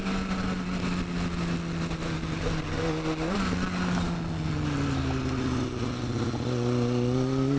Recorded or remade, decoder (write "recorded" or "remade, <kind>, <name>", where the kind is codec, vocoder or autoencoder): recorded